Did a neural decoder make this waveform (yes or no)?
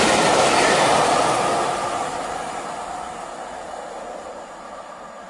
no